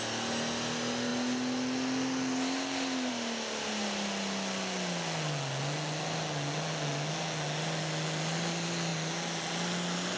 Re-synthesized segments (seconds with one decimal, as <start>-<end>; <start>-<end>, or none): none